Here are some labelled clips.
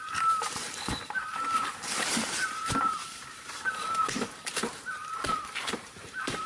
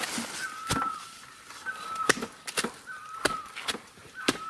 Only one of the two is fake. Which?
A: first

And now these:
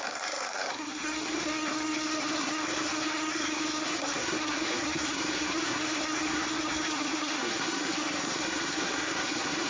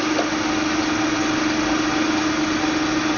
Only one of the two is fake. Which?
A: first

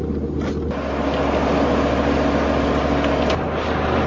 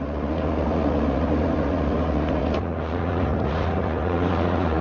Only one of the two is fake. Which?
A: second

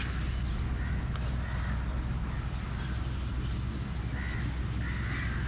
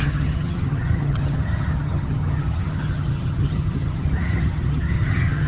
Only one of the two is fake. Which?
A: second